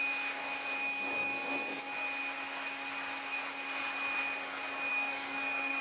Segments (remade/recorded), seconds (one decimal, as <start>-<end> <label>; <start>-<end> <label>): 0.0-1.2 recorded; 1.2-1.8 remade; 1.8-4.9 recorded; 4.9-5.8 remade